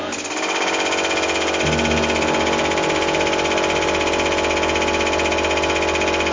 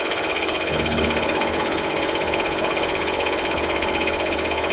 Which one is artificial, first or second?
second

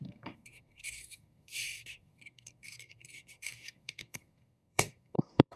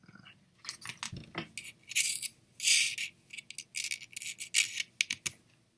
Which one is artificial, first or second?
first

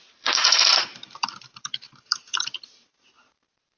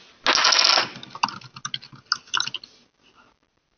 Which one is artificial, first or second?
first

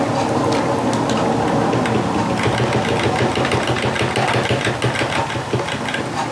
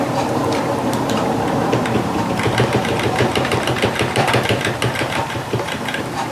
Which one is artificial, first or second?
second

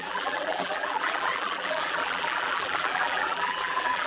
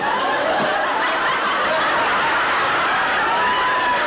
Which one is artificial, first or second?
first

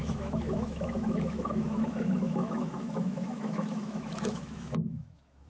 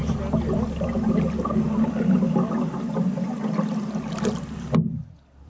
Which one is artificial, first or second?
first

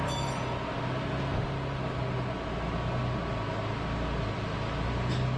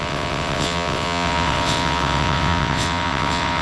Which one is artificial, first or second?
second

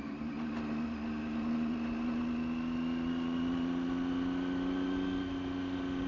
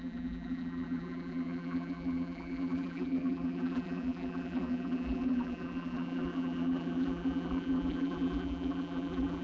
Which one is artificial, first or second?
second